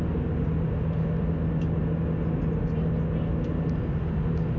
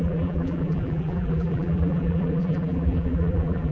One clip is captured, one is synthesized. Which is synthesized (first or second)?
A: second